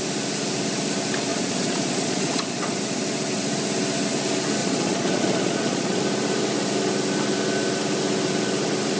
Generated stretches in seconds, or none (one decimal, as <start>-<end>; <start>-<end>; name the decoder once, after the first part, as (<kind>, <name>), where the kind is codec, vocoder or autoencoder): 1.3-2.8 (vocoder, Vocos); 4.6-6.0